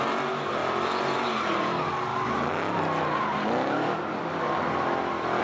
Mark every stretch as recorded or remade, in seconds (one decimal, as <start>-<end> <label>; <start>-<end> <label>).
0.0-5.4 recorded